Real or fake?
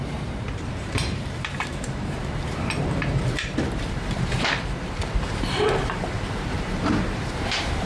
fake